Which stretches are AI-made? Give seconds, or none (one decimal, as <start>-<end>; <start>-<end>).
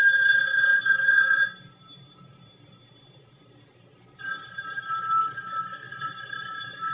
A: none